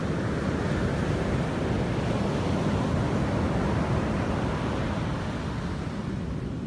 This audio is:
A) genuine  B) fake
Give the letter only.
A